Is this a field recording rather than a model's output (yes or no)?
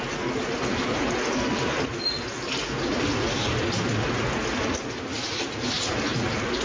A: yes